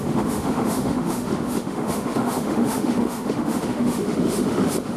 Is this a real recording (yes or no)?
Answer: no